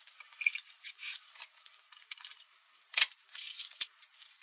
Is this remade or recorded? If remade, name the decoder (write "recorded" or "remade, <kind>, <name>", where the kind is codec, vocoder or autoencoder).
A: remade, vocoder, Vocos